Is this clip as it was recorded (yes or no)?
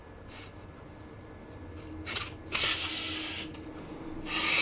yes